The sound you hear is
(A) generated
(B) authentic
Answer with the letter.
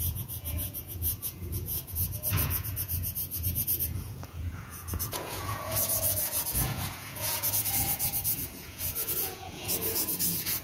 A